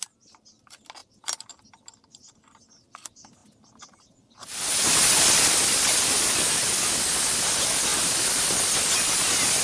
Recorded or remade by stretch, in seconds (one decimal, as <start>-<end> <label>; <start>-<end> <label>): 0.0-9.6 recorded